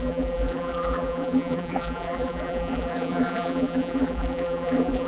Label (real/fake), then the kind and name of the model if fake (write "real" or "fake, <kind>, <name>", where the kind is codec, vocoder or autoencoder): fake, vocoder, BigVGAN v2